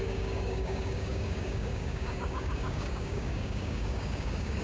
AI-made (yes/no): yes